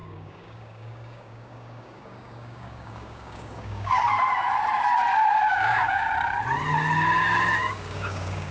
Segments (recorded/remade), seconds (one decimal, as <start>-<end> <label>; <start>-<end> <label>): 0.0-3.9 remade; 3.9-5.5 recorded; 5.5-6.1 remade; 6.1-7.6 recorded; 7.6-8.5 remade